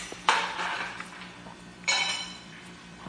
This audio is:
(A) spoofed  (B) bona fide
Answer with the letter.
A